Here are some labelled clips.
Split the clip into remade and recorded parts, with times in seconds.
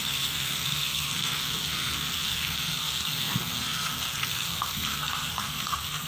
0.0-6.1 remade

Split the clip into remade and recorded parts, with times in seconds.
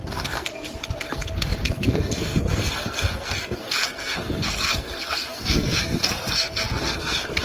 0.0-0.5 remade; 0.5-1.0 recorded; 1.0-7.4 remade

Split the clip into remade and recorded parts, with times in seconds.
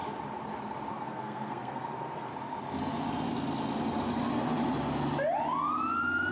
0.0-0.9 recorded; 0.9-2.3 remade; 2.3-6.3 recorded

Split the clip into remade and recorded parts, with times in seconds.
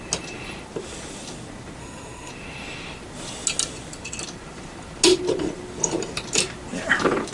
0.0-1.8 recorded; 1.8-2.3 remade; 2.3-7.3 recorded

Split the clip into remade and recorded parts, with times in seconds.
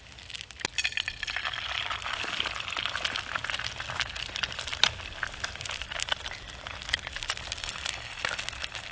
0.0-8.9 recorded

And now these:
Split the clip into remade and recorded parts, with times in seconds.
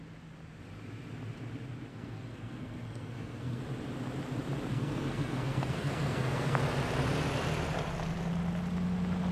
0.0-1.9 recorded; 1.9-3.6 remade; 3.6-4.7 recorded; 4.7-6.6 remade; 6.6-9.3 recorded